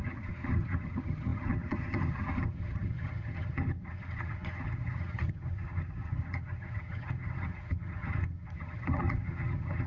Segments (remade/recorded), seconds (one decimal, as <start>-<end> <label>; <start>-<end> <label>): 0.0-9.9 remade